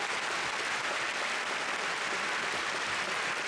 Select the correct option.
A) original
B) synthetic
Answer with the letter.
B